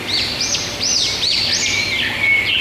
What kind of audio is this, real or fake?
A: real